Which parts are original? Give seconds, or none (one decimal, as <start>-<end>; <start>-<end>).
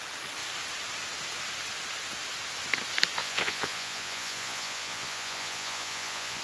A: 0.0-3.2